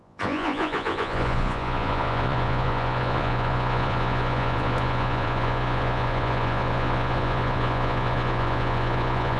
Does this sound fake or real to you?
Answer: fake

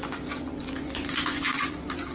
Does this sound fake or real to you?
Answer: fake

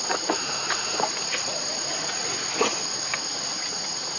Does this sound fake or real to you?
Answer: fake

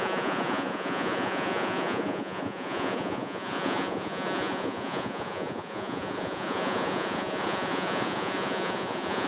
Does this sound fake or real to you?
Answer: fake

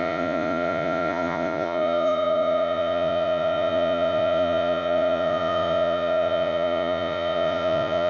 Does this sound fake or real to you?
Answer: fake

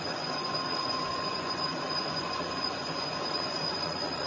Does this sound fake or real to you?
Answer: fake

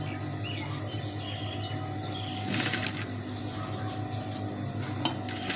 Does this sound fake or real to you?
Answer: real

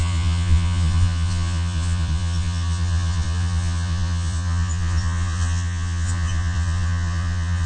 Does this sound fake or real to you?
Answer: fake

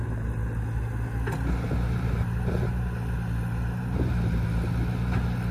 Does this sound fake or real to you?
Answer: real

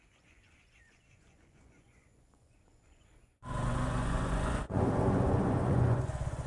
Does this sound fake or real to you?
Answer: fake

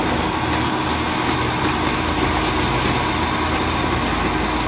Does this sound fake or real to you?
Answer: real